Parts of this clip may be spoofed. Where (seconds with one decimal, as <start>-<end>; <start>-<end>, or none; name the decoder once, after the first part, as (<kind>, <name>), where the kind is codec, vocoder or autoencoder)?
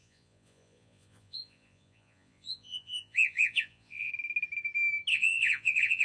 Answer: 0.0-4.1 (vocoder, Vocos); 5.1-6.0